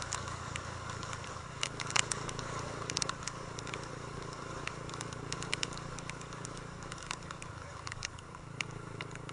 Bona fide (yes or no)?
no